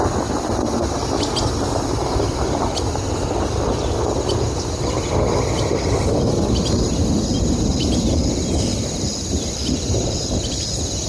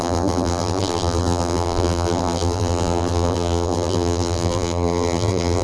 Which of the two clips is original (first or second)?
first